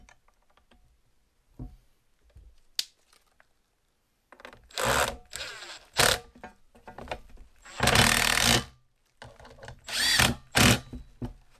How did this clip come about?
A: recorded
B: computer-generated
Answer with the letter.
A